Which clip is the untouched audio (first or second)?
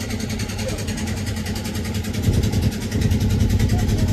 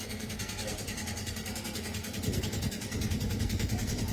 first